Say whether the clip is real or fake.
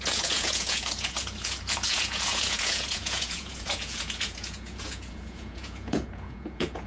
fake